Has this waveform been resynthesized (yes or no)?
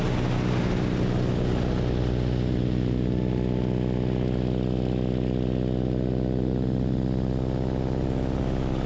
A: no